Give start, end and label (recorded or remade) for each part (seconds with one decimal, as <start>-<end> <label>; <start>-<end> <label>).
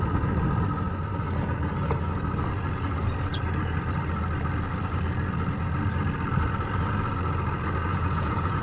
0.0-7.9 recorded; 7.9-8.6 remade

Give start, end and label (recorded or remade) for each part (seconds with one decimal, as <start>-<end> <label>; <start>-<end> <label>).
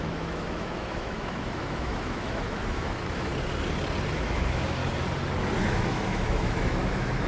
0.0-3.3 remade; 3.3-4.1 recorded; 4.1-4.8 remade; 4.8-5.6 recorded; 5.6-7.3 remade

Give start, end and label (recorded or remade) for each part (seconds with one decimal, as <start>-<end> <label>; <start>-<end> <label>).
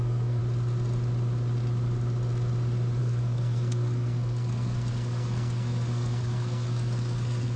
0.0-0.4 remade; 0.4-3.0 recorded; 3.0-7.6 remade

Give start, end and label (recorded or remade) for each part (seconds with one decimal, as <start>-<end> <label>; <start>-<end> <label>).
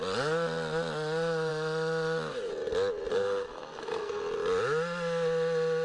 0.0-3.1 recorded; 3.1-4.2 remade; 4.2-5.8 recorded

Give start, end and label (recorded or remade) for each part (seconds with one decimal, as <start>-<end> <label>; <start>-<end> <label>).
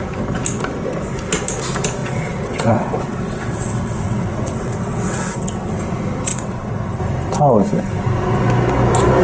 0.0-2.0 recorded; 2.0-5.8 remade; 5.8-6.3 recorded; 6.3-7.0 remade; 7.0-9.2 recorded